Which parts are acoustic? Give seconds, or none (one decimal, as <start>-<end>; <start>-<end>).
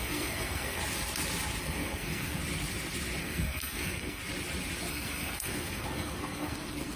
0.8-1.6; 2.4-3.2; 4.2-4.9